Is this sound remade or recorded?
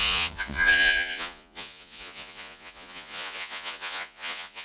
remade